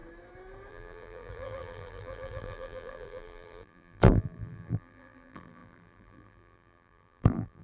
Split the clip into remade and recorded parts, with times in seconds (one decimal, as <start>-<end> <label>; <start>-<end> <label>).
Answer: 0.0-0.7 recorded; 0.7-7.6 remade

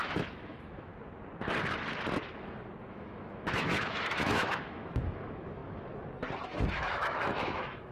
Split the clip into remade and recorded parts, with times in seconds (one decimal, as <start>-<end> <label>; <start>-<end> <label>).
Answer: 0.0-0.9 remade; 0.9-2.8 recorded; 2.8-5.6 remade; 5.6-6.7 recorded; 6.7-7.9 remade